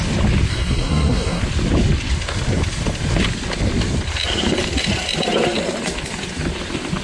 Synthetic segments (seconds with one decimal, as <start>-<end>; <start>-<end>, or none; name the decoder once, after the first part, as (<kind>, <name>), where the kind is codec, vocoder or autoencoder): 0.5-1.4 (codec, SNAC)